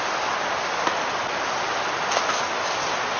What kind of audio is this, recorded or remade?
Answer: recorded